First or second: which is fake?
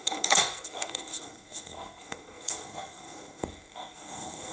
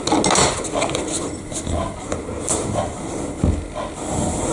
first